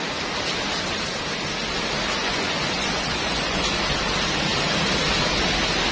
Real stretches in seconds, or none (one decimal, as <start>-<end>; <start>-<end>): 0.0-2.2; 3.6-5.9